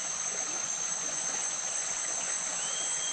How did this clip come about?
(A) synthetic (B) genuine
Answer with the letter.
A